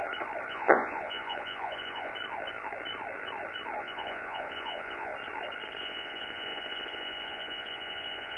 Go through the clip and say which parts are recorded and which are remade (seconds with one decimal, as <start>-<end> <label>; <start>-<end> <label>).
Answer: 0.0-0.5 recorded; 0.5-2.1 remade; 2.1-3.8 recorded; 3.8-5.1 remade; 5.1-5.8 recorded; 5.8-8.4 remade